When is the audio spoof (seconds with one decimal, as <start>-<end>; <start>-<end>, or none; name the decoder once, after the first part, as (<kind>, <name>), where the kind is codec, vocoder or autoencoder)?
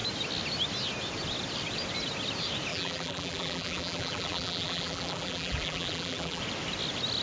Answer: 2.7-6.4 (vocoder, BigVGAN v2)